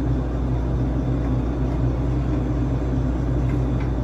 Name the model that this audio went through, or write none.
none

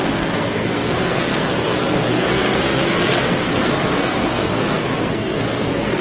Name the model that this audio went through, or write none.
codec, SNAC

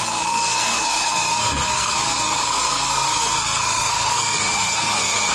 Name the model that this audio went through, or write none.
codec, SNAC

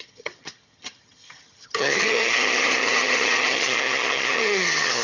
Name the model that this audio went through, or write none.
vocoder, HiFi-GAN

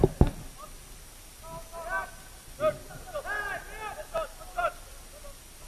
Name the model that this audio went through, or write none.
none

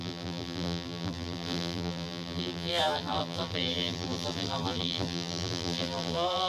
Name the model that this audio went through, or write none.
vocoder, BigVGAN v2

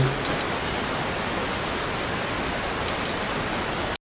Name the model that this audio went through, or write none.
none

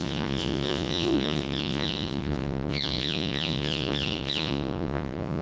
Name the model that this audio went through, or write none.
vocoder, Vocos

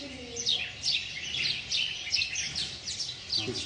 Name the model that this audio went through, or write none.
none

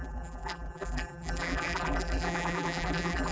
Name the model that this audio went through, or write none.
vocoder, BigVGAN v2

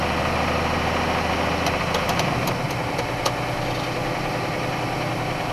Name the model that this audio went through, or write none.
none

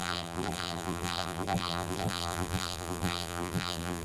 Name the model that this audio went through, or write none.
vocoder, BigVGAN v2